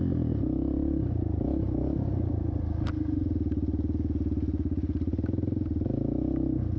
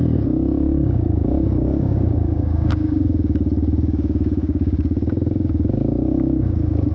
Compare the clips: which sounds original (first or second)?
first